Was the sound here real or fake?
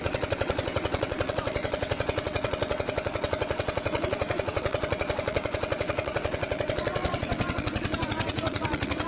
fake